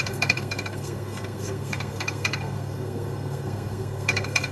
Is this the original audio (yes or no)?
no